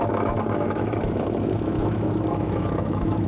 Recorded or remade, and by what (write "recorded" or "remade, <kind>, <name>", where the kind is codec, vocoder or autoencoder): remade, autoencoder, DAC-VAE